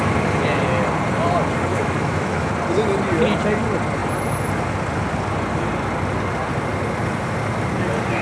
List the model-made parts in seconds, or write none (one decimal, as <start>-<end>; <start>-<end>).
1.7-2.5